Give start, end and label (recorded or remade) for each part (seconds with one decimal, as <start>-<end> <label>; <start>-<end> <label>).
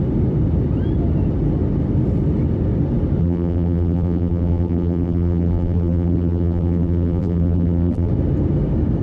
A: 0.0-3.2 recorded; 3.2-8.1 remade; 8.1-9.0 recorded